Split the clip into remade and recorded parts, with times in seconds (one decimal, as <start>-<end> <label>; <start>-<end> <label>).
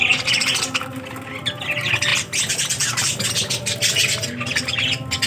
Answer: 0.0-5.3 recorded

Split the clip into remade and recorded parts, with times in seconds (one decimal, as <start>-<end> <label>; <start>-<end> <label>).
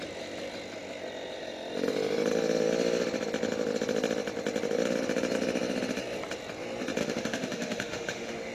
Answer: 0.0-7.0 recorded; 7.0-8.5 remade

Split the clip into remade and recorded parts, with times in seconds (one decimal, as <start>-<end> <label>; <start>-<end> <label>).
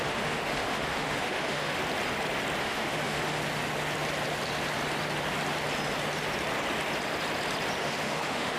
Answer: 0.0-1.8 remade; 1.8-2.6 recorded; 2.6-3.4 remade; 3.4-7.8 recorded; 7.8-8.6 remade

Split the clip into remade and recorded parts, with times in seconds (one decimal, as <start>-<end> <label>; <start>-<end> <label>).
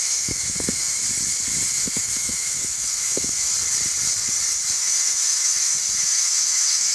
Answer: 0.0-1.0 remade; 1.0-1.7 recorded; 1.7-3.5 remade; 3.5-4.7 recorded; 4.7-6.9 remade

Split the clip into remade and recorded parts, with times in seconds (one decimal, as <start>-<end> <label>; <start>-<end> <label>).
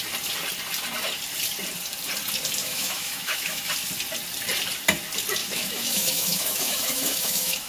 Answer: 0.0-2.6 recorded; 2.6-3.7 remade; 3.7-5.4 recorded; 5.4-7.7 remade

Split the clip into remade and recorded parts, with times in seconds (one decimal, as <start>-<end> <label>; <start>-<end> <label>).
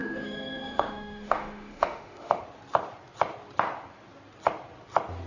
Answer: 0.0-2.4 remade; 2.4-5.3 recorded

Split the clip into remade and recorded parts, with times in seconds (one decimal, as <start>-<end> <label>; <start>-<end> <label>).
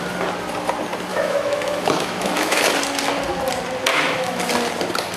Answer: 0.0-1.1 recorded; 1.1-2.7 remade; 2.7-3.9 recorded; 3.9-4.4 remade; 4.4-5.2 recorded